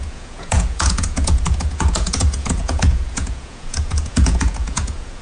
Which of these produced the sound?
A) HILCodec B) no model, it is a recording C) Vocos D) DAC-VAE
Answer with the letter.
C